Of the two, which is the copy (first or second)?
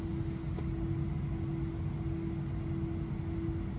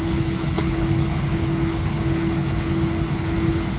second